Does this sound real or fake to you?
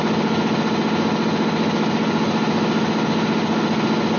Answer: real